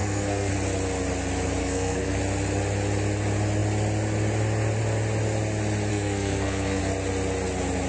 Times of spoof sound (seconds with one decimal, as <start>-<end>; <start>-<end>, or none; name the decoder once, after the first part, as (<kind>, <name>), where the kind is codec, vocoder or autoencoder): 0.0-0.5 (codec, SNAC); 1.6-2.2; 5.9-6.8